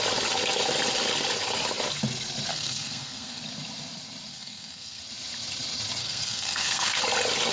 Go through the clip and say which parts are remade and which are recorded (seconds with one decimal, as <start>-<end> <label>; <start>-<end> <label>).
0.0-2.5 recorded; 2.5-3.4 remade; 3.4-4.3 recorded; 4.3-5.0 remade; 5.0-6.0 recorded; 6.0-7.0 remade; 7.0-7.5 recorded